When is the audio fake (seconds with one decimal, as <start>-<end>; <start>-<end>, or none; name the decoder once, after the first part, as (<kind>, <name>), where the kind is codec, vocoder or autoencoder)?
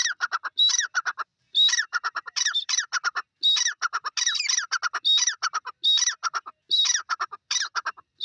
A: 1.3-2.8 (vocoder, BigVGAN v2)